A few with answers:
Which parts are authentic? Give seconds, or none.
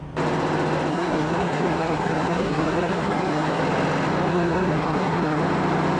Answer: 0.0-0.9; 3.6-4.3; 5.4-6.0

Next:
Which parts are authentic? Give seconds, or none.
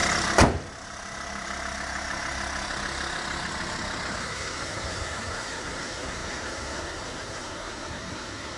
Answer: 0.0-4.2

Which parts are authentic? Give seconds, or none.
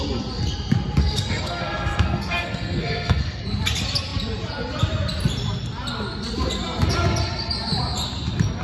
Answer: 0.0-1.0; 3.4-8.6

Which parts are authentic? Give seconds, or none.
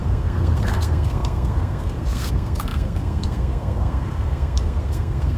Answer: none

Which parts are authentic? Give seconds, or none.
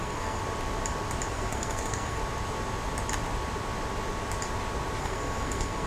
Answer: 0.4-1.3; 2.2-5.0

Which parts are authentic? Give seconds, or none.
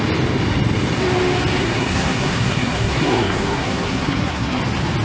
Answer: 0.0-1.6; 4.6-5.0